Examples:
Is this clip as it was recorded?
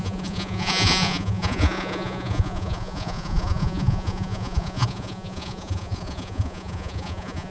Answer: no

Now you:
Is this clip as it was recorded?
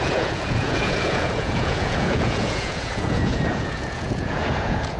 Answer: no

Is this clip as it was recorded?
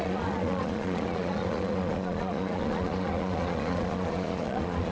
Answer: no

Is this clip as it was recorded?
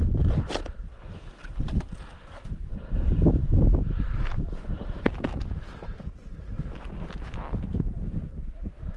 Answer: yes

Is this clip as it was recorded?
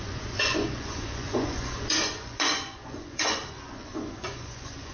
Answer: no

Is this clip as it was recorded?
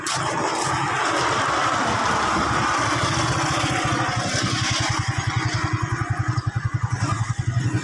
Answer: yes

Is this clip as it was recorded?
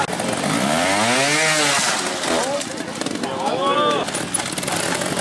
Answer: yes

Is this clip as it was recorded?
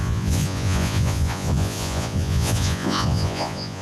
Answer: no